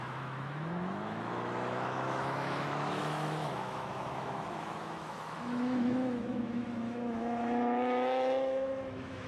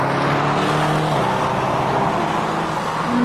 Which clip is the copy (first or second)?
first